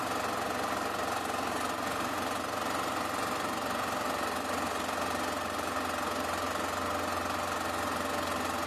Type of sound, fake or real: real